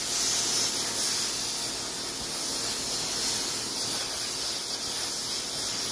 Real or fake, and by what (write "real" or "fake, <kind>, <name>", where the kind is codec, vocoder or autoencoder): real